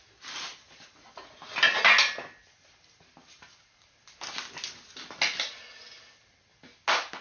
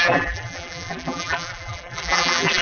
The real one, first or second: first